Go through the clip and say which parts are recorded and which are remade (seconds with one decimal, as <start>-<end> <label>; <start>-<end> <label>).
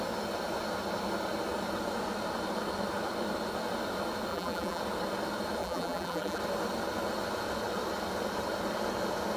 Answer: 0.0-4.3 recorded; 4.3-4.8 remade; 4.8-5.6 recorded; 5.6-6.4 remade; 6.4-9.4 recorded